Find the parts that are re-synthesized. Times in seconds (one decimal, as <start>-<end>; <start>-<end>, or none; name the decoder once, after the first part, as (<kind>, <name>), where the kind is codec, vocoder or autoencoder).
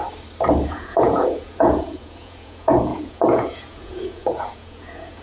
0.7-5.2 (vocoder, Vocos)